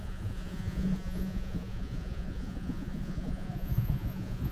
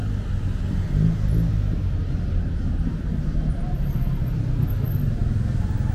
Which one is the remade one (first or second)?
first